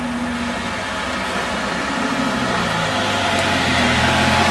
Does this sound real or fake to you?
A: real